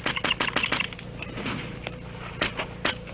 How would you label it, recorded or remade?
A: recorded